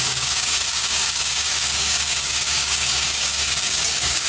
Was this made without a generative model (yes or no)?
no